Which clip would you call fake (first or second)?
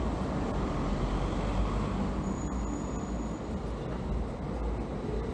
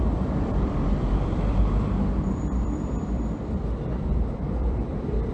second